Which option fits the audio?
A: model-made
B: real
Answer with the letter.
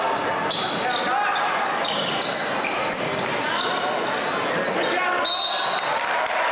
B